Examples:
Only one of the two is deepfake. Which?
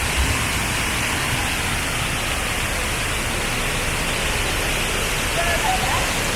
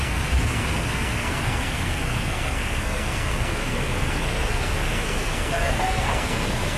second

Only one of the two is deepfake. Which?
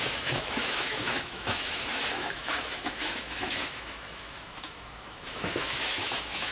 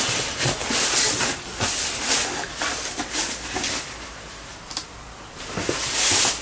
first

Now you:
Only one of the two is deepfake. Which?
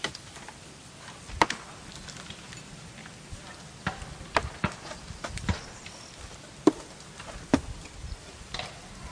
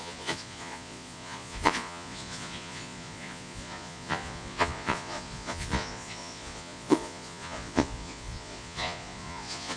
second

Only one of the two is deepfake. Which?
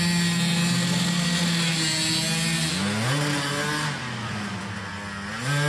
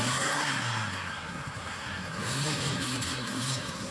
second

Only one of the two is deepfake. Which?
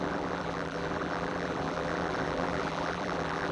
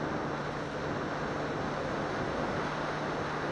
first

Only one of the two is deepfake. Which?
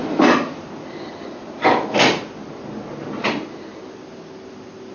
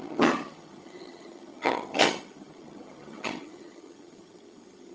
second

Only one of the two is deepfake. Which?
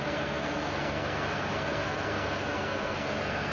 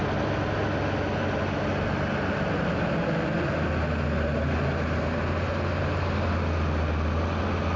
first